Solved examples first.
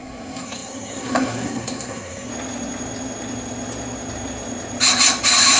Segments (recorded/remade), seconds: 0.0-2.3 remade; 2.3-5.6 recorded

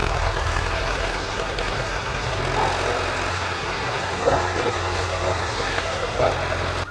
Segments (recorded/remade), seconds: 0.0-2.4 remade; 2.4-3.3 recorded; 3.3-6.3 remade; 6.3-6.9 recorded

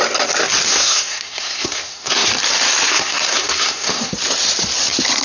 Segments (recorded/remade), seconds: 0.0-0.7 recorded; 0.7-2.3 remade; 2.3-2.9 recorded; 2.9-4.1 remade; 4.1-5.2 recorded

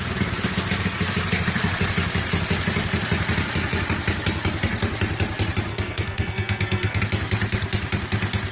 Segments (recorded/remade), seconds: 0.0-5.7 recorded; 5.7-7.0 remade; 7.0-8.5 recorded

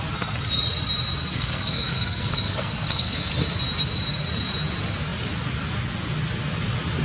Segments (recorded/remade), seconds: 0.0-1.3 recorded; 1.3-3.3 remade; 3.3-7.0 recorded

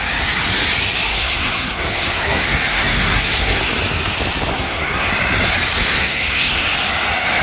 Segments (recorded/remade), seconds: 0.0-1.1 recorded; 1.1-3.6 remade; 3.6-4.5 recorded; 4.5-5.1 remade; 5.1-5.9 recorded; 5.9-6.7 remade; 6.7-7.4 recorded

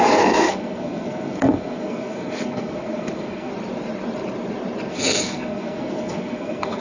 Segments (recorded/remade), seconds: 0.0-3.5 remade; 3.5-4.9 recorded; 4.9-6.8 remade

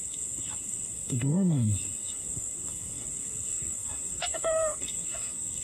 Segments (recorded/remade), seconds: 0.0-5.6 remade